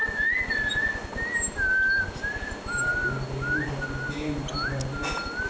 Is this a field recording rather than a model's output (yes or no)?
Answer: yes